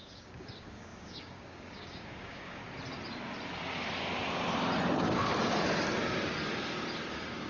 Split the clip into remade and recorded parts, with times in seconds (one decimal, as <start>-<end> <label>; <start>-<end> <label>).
0.0-2.6 remade; 2.6-7.1 recorded; 7.1-7.5 remade